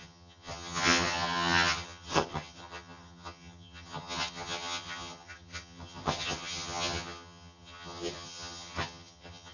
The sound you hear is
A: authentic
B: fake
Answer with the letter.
B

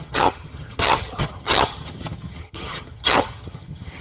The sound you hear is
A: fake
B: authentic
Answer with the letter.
A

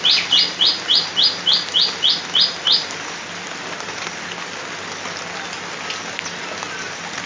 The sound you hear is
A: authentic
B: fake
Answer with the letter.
A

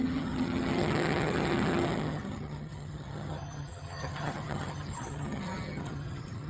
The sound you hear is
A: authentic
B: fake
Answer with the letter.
B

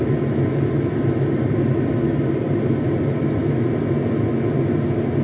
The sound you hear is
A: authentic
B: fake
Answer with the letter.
A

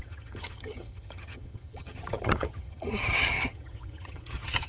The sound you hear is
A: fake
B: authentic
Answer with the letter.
A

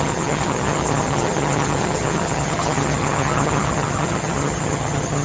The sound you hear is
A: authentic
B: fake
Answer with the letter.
B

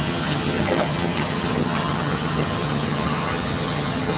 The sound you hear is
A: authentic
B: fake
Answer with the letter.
B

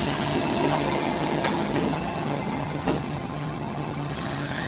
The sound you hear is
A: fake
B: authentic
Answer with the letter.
A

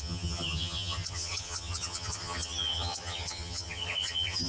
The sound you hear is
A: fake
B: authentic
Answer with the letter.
A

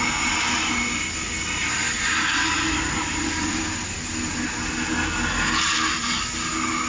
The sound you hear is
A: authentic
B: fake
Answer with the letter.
A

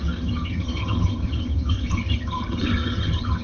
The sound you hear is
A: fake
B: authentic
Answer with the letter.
A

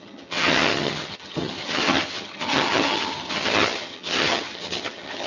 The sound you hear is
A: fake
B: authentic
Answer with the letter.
A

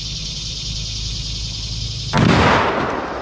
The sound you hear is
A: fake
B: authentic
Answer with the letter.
B